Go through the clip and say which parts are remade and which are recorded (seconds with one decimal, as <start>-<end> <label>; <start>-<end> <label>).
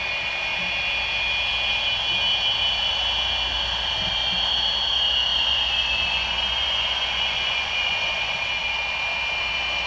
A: 0.0-5.3 recorded; 5.3-8.4 remade; 8.4-9.9 recorded